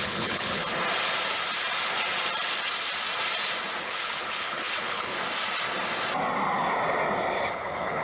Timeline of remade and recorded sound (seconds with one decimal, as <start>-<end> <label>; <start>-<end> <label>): 0.0-0.6 remade; 0.6-3.8 recorded; 3.8-5.1 remade; 5.1-7.5 recorded; 7.5-8.0 remade